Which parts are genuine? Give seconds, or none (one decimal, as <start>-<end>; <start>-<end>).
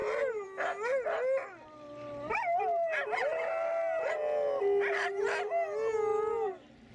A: 0.0-6.9